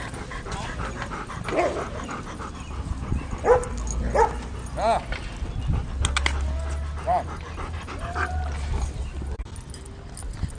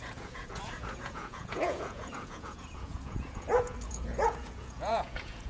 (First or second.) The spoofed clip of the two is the second